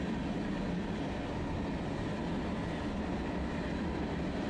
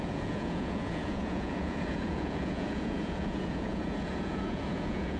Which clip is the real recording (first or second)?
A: first